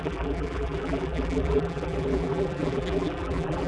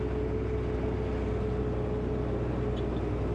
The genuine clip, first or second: second